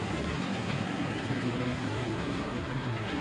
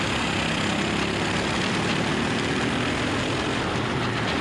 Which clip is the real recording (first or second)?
second